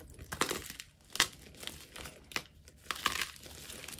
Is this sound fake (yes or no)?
no